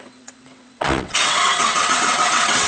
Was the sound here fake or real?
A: fake